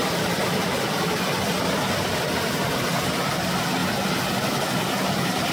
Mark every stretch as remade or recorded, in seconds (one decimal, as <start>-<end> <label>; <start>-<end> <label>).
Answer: 0.0-2.5 remade; 2.5-3.8 recorded; 3.8-5.5 remade